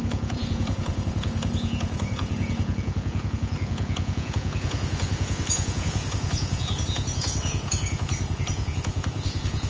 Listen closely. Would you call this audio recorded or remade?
remade